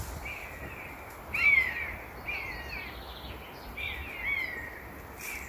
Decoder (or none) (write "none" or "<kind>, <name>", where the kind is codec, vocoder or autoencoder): none